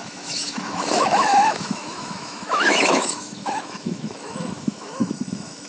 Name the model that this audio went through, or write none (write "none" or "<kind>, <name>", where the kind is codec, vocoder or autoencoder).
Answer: autoencoder, DAC-VAE